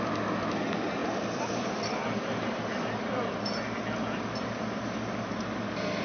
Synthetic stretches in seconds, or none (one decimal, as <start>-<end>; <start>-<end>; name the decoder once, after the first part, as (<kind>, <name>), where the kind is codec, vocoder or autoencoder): 1.0-3.6 (vocoder, BigVGAN v2)